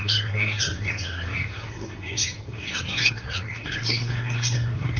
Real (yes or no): no